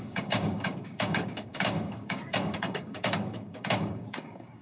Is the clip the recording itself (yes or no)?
no